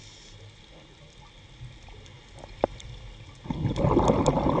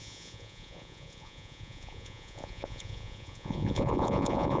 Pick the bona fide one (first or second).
first